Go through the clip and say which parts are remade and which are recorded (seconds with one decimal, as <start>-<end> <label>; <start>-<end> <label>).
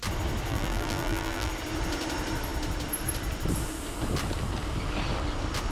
0.0-0.5 recorded; 0.5-1.5 remade; 1.5-5.7 recorded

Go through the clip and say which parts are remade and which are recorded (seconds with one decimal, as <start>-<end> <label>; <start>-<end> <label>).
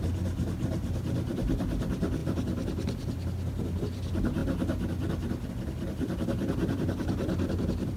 0.0-2.2 remade; 2.2-3.8 recorded; 3.8-4.4 remade; 4.4-5.5 recorded; 5.5-8.0 remade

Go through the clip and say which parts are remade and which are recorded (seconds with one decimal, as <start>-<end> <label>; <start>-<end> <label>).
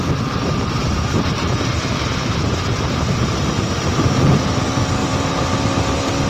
0.0-0.8 recorded; 0.8-4.6 remade; 4.6-5.0 recorded; 5.0-5.5 remade; 5.5-6.3 recorded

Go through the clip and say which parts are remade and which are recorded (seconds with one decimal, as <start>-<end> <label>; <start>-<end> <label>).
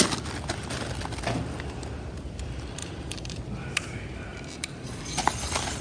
0.0-2.8 recorded; 2.8-3.4 remade; 3.4-4.3 recorded; 4.3-4.9 remade; 4.9-5.8 recorded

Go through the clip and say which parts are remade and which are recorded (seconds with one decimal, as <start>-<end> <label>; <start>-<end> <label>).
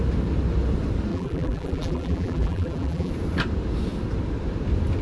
0.0-1.1 recorded; 1.1-3.1 remade; 3.1-5.0 recorded